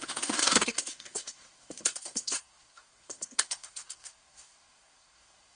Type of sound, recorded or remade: remade